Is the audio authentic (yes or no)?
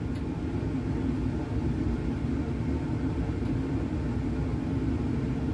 yes